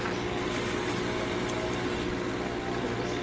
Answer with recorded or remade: recorded